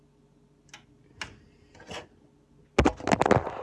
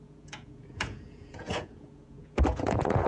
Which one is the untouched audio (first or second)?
first